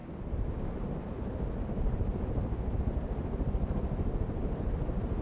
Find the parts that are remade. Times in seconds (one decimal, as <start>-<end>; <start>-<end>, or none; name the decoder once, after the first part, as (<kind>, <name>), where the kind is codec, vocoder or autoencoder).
none